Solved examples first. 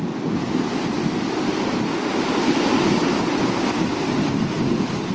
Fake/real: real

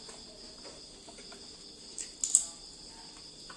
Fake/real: real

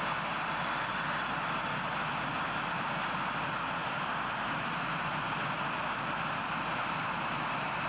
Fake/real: real